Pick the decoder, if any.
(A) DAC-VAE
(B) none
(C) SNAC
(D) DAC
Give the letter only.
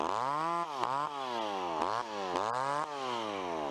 B